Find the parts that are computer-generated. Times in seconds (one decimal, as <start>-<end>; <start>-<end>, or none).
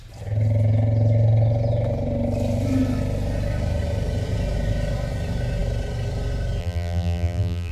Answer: 6.6-7.7